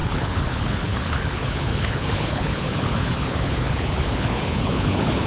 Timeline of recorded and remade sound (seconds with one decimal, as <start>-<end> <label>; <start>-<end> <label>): 0.0-5.3 remade